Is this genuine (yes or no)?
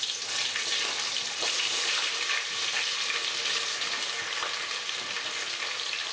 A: yes